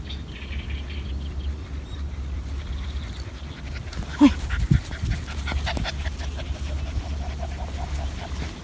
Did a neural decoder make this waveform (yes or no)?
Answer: no